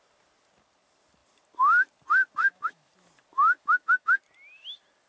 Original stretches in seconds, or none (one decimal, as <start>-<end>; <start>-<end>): 0.0-2.4; 2.9-3.3; 4.2-5.1